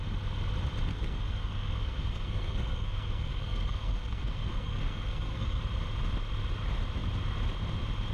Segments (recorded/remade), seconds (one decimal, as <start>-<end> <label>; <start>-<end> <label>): 0.0-0.9 recorded; 0.9-5.6 remade; 5.6-8.1 recorded